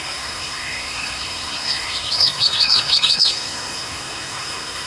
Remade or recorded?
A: remade